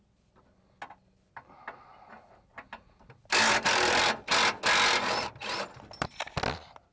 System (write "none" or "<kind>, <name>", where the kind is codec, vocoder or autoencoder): none